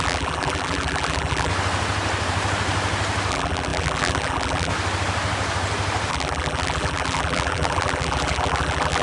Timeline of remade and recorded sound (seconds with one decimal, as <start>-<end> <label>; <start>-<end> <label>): 0.0-1.5 remade; 1.5-3.3 recorded; 3.3-4.7 remade; 4.7-6.1 recorded; 6.1-9.0 remade